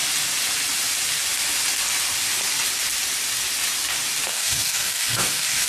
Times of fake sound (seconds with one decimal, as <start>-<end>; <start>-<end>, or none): 4.3-5.7